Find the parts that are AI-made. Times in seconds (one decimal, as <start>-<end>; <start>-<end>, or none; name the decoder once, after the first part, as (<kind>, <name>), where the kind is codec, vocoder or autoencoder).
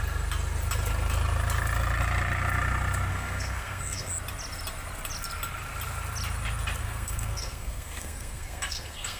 3.1-4.1 (codec, SNAC); 6.8-9.2